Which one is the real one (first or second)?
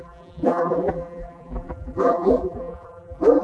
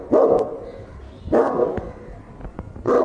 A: second